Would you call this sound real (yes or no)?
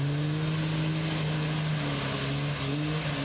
yes